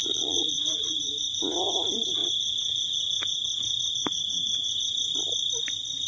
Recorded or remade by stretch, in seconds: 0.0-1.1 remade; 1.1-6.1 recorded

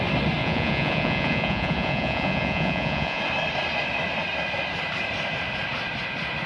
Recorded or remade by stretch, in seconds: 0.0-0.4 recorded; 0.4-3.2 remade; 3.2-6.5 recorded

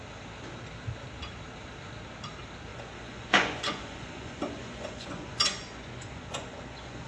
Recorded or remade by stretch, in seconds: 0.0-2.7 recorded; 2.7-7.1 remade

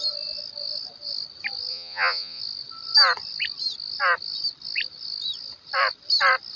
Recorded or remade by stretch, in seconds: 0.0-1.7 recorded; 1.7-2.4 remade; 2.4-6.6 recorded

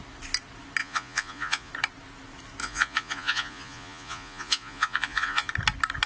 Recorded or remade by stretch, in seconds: 0.0-0.8 recorded; 0.8-1.7 remade; 1.7-2.6 recorded; 2.6-5.5 remade; 5.5-6.1 recorded